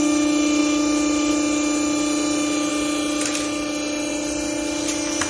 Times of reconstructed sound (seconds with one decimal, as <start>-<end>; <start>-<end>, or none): none